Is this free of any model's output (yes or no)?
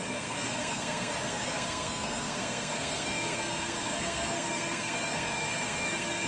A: no